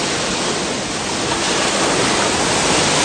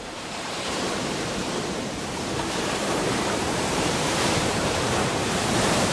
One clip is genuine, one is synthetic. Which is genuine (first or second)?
first